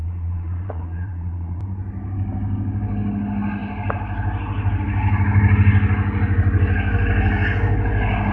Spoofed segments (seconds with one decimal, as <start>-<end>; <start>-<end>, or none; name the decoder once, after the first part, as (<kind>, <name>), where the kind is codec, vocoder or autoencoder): 0.0-1.6 (vocoder, Vocos)